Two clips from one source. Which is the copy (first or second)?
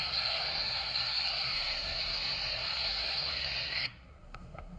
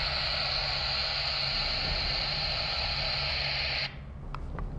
first